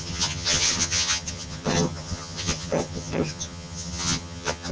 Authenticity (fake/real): fake